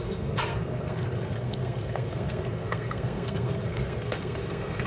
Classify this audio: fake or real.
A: fake